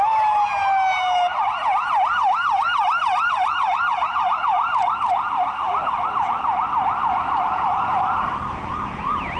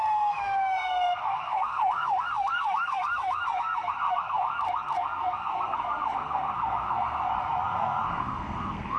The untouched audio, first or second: first